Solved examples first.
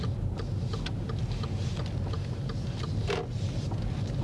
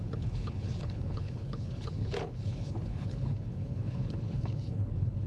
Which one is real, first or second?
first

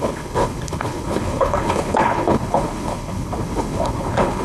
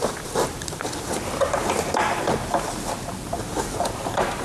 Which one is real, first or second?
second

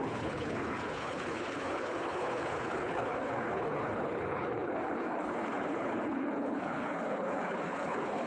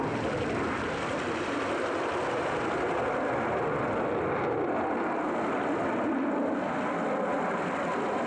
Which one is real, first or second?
second